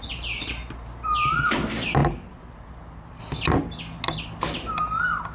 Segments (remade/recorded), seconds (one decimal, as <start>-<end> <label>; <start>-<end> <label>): 0.0-2.0 recorded; 2.0-3.2 remade; 3.2-5.3 recorded